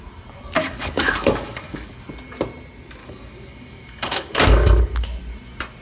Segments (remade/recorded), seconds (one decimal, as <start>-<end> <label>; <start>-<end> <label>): 0.0-0.6 recorded; 0.6-1.9 remade; 1.9-3.0 recorded; 3.0-4.8 remade; 4.8-5.8 recorded